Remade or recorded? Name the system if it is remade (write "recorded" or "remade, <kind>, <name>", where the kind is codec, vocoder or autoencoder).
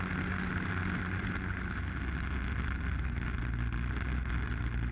recorded